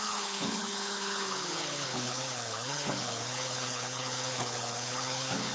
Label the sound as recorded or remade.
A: remade